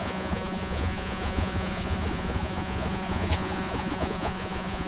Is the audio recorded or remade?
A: remade